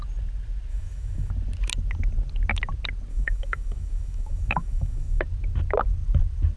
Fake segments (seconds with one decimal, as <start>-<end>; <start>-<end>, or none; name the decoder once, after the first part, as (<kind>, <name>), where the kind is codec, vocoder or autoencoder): 0.7-1.3 (autoencoder, DAC-VAE); 3.1-5.2